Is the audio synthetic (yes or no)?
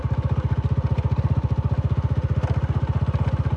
no